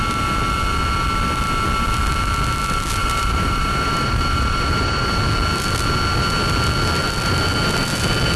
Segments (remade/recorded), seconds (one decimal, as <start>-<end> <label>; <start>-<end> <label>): 0.0-3.0 recorded; 3.0-5.2 remade; 5.2-8.4 recorded